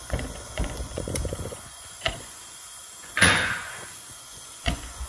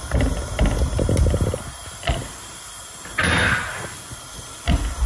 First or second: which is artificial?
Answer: first